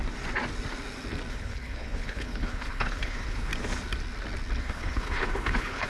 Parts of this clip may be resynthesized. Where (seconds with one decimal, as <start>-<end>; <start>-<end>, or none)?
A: 1.3-3.5; 4.6-5.9

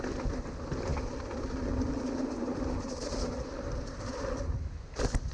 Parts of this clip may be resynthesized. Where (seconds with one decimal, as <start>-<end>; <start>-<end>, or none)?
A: 0.9-4.1

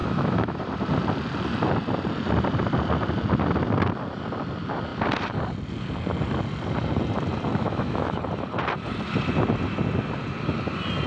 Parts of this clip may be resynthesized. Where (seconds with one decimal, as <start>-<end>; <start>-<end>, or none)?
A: 0.0-0.6; 7.5-8.2

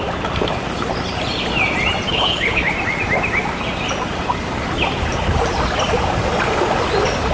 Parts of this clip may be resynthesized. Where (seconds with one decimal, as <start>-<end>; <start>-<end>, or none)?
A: 2.1-2.7

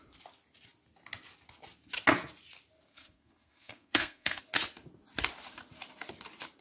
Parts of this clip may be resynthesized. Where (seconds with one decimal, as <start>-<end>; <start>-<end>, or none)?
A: 2.9-4.4

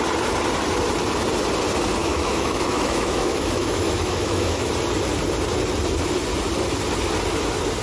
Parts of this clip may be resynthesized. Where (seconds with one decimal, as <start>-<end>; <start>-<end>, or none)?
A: 2.0-4.7

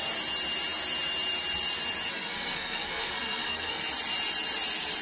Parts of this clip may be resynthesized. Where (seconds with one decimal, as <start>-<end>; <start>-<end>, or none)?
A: 2.1-3.8